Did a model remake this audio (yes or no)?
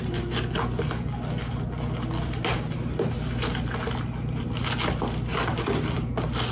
no